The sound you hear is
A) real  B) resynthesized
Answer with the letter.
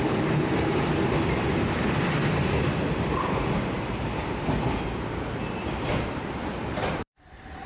B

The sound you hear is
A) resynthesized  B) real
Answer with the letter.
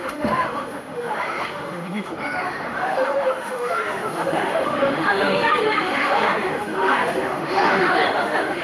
A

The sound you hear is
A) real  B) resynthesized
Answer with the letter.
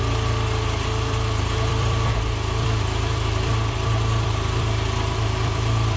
B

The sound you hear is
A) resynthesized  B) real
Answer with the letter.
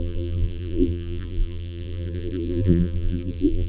A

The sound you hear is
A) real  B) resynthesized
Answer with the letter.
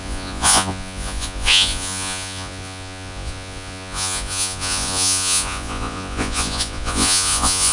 B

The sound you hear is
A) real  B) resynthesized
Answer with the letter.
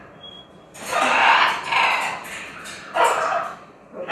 A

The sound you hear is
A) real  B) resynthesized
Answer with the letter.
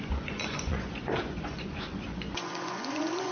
B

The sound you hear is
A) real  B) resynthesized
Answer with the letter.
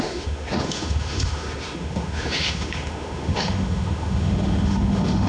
B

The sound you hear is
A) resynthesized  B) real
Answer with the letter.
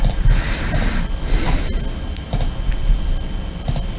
B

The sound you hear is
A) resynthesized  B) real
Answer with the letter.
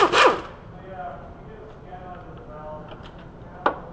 B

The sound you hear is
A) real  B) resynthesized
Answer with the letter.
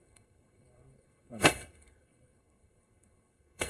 B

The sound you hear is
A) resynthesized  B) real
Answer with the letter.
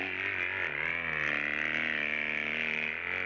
B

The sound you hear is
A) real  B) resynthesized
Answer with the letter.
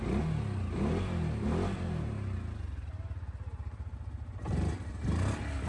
A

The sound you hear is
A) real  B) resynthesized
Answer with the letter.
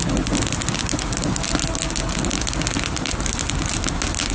A